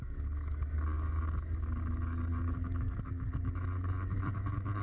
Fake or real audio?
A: fake